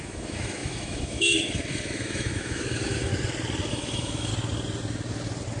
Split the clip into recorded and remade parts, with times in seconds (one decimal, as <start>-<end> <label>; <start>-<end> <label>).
0.0-3.1 remade; 3.1-3.7 recorded; 3.7-4.3 remade; 4.3-5.6 recorded